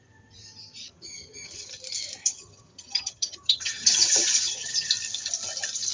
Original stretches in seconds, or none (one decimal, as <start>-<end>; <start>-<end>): 0.0-0.9; 1.7-2.2; 4.9-5.9